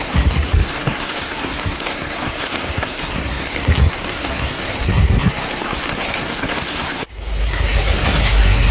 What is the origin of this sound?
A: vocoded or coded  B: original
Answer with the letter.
A